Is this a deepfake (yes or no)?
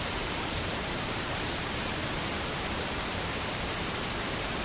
yes